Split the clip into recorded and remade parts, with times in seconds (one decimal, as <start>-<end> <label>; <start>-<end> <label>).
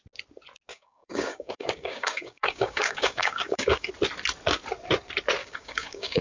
0.0-0.7 recorded; 0.7-3.9 remade; 3.9-5.4 recorded; 5.4-6.2 remade